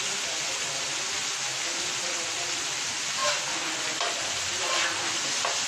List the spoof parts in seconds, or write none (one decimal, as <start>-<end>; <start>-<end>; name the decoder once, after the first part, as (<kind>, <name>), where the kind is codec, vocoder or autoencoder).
none